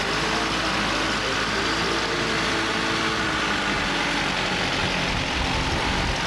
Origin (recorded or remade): recorded